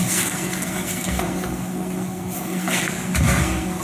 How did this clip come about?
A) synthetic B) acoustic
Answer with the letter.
A